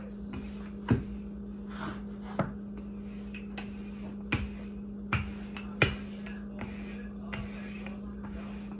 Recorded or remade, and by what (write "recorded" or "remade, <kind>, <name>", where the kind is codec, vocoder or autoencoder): recorded